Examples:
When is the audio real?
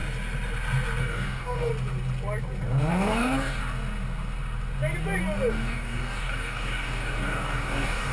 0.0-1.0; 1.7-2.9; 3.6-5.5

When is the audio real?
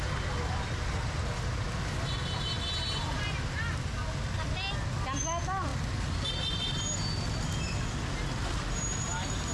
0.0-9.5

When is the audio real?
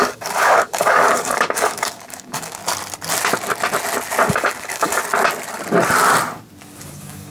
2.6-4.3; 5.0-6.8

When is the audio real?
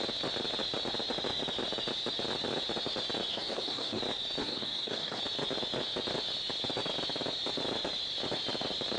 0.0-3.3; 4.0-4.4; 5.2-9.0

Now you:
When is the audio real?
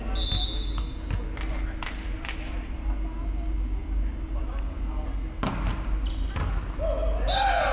0.0-7.7